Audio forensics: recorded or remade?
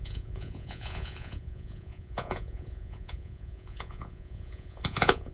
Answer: remade